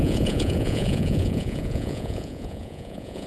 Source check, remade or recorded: remade